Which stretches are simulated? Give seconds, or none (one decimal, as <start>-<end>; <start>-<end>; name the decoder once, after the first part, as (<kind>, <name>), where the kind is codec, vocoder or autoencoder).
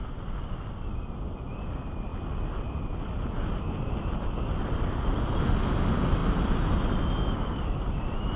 none